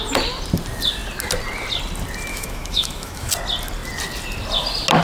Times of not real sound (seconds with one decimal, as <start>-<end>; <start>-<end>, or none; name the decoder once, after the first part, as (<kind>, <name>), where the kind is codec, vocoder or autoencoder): 2.3-3.3 (autoencoder, DAC-VAE)